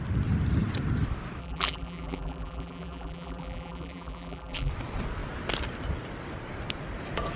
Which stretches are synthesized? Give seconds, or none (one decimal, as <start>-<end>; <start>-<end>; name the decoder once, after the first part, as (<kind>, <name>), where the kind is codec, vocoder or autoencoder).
1.4-4.7 (vocoder, BigVGAN v2)